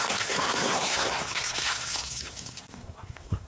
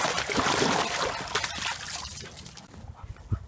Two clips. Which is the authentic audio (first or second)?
second